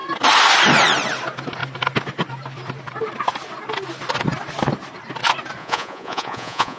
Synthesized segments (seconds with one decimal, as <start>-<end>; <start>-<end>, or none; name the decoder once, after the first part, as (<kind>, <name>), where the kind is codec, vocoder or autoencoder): 5.6-6.8 (vocoder, Vocos)